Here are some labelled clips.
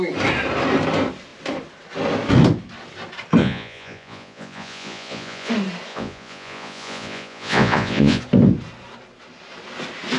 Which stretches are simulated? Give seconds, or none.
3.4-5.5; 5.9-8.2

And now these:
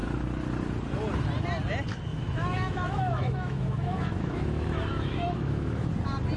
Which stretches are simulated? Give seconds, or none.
2.1-5.9

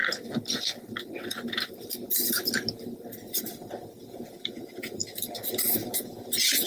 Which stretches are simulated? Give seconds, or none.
4.0-5.0; 5.7-6.7

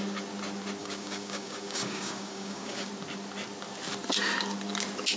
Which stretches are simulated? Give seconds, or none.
0.8-2.9